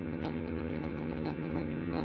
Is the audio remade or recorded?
remade